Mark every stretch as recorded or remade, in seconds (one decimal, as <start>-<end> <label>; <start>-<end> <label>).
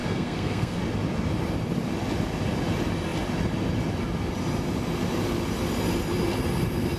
0.0-0.8 remade; 0.8-7.0 recorded